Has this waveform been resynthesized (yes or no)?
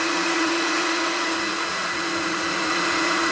yes